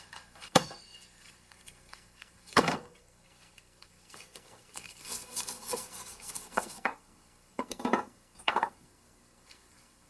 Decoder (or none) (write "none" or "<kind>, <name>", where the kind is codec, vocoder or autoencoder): codec, SNAC